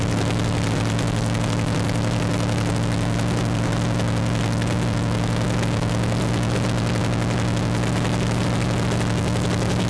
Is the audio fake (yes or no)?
no